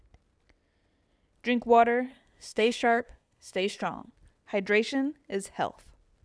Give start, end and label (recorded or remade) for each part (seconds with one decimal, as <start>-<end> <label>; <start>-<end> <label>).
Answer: 0.0-2.1 recorded; 2.1-4.1 remade; 4.1-6.2 recorded